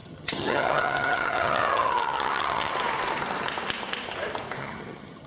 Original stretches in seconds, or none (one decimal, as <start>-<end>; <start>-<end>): 2.7-4.6